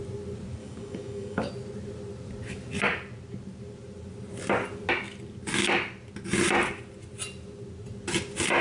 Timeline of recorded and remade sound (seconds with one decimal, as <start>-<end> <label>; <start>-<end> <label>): 0.0-0.6 recorded; 0.6-1.5 remade; 1.5-8.6 recorded